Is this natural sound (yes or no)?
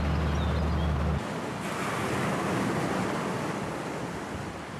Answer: yes